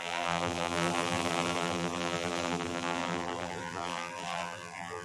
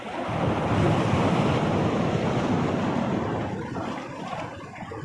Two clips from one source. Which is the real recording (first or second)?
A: second